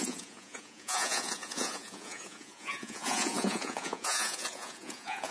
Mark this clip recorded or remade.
remade